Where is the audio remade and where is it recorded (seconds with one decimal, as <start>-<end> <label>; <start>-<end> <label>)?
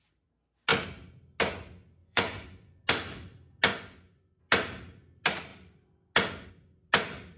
0.0-2.0 recorded; 2.0-2.8 remade; 2.8-3.7 recorded; 3.7-4.4 remade; 4.4-7.4 recorded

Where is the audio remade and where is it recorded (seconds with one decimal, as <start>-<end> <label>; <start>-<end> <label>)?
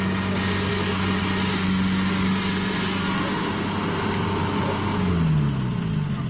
0.0-0.7 recorded; 0.7-1.2 remade; 1.2-4.4 recorded; 4.4-5.1 remade; 5.1-6.3 recorded